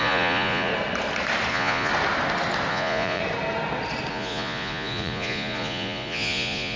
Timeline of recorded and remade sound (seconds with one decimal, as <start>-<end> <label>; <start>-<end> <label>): 0.0-0.7 remade; 0.7-1.5 recorded; 1.5-1.9 remade; 1.9-2.7 recorded; 2.7-3.2 remade; 3.2-4.1 recorded; 4.1-6.8 remade